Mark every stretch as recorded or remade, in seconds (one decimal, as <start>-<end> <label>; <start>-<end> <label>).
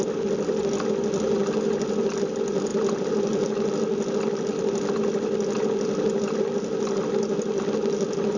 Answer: 0.0-8.4 recorded